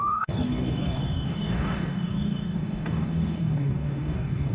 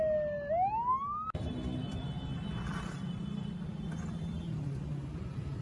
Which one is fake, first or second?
first